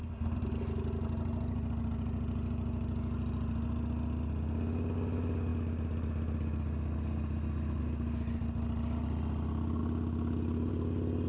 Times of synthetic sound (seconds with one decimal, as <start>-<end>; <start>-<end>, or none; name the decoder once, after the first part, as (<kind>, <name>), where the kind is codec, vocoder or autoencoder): none